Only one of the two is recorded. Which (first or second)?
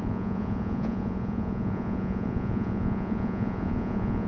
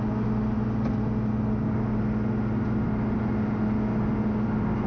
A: second